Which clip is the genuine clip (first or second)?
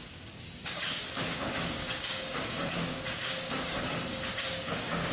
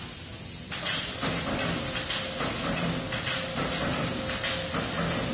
second